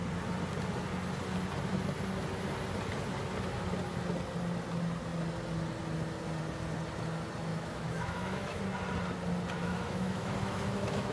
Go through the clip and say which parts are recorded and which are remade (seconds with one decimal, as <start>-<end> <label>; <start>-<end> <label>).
0.0-7.5 recorded; 7.5-8.6 remade; 8.6-9.6 recorded; 9.6-11.1 remade